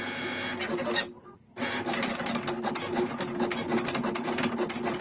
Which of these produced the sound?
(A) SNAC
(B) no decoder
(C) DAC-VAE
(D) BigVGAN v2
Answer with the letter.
B